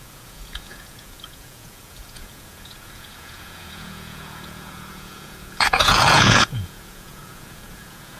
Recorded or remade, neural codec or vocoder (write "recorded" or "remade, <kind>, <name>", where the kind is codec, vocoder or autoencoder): remade, vocoder, Vocos